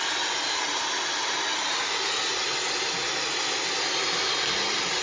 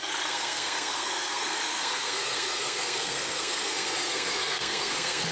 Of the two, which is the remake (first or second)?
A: second